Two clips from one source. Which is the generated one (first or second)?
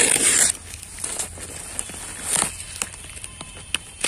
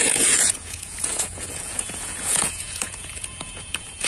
second